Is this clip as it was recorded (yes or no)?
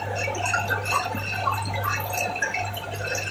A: yes